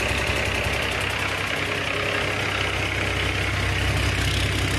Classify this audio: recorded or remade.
recorded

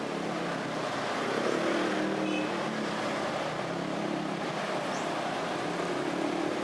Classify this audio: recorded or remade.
recorded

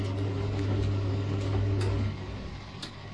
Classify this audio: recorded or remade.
remade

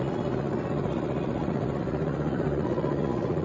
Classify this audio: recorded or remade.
remade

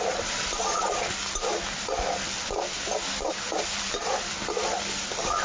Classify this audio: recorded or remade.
remade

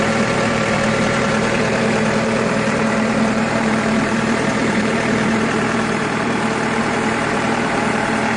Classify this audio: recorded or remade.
remade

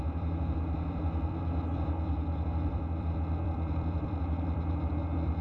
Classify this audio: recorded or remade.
remade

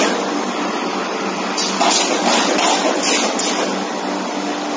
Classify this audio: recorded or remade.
recorded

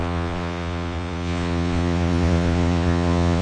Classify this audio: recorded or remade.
remade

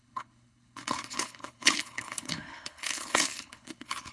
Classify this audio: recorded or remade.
remade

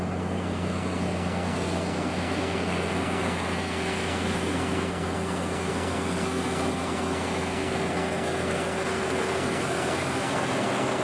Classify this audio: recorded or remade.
remade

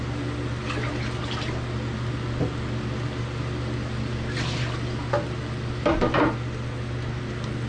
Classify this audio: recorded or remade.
recorded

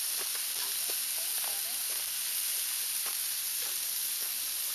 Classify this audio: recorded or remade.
recorded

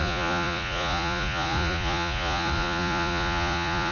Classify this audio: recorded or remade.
remade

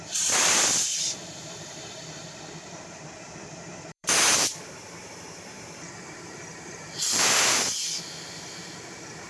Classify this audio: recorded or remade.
remade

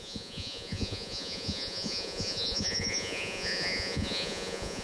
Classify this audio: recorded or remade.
remade